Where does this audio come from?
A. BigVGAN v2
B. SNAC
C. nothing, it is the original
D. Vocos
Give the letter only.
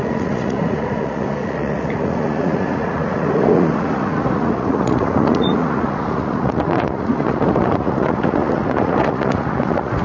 D